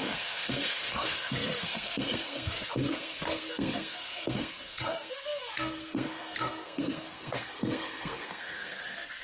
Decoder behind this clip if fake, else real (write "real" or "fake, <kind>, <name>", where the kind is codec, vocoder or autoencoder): fake, codec, SNAC